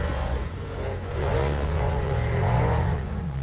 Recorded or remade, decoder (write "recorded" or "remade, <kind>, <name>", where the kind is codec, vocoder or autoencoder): remade, vocoder, Vocos